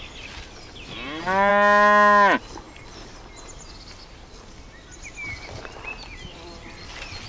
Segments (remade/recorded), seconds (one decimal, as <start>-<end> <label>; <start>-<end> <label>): 0.0-7.3 recorded